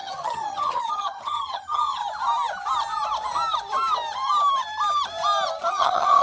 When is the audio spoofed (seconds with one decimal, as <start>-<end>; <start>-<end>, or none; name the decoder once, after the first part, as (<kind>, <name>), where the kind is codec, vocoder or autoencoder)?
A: 0.0-2.0 (vocoder, HiFi-GAN); 5.7-6.2